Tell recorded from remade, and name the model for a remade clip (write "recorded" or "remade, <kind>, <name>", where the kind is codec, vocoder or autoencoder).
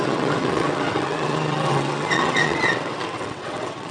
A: remade, vocoder, WaveNeXt